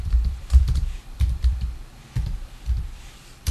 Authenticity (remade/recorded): remade